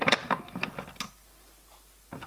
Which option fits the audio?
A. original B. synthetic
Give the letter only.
A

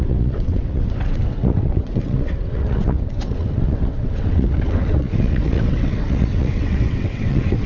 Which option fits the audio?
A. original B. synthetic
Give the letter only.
B